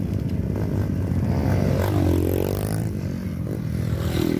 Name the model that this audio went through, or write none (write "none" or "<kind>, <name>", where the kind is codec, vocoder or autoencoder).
none